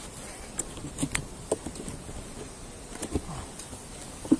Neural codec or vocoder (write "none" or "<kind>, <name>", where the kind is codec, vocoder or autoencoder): none